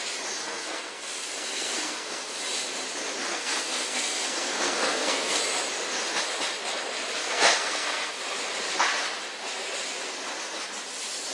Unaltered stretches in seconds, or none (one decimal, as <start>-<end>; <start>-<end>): 0.0-0.4; 2.4-3.3; 5.4-7.2; 8.2-11.3